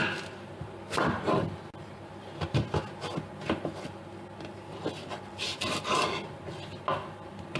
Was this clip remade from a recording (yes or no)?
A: no